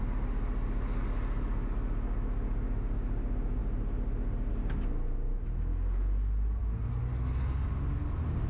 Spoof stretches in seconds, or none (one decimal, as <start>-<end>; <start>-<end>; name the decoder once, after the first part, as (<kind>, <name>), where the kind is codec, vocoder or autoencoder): none